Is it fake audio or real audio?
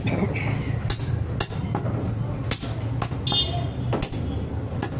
real